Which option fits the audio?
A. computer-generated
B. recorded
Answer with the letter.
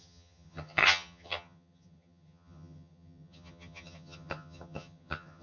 A